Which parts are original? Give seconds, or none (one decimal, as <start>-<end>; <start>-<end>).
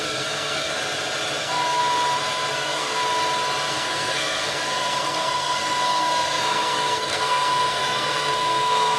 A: 0.7-1.4; 1.8-2.5; 3.0-3.7